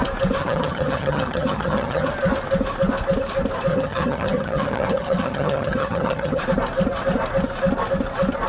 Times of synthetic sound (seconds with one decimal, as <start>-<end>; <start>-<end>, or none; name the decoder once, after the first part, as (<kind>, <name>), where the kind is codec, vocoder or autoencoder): 0.4-2.1 (vocoder, HiFi-GAN); 3.7-6.4